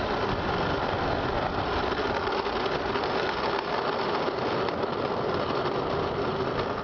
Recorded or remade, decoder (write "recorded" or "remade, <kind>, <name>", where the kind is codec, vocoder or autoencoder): recorded